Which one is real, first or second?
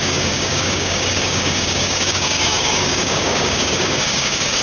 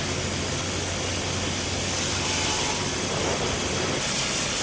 second